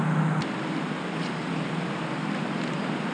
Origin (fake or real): real